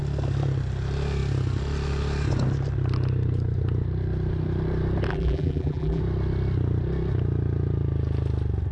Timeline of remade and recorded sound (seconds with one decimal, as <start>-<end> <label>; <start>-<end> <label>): 0.0-5.1 recorded; 5.1-6.0 remade; 6.0-8.7 recorded